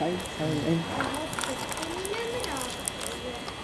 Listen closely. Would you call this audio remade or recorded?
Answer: recorded